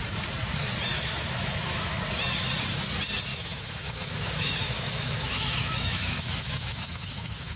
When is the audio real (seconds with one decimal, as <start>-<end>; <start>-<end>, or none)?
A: 0.0-0.9; 2.0-3.3